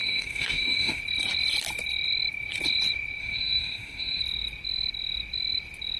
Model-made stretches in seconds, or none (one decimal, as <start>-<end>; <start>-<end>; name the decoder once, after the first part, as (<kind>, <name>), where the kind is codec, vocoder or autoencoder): 0.0-1.0 (autoencoder, DAC-VAE); 3.2-4.2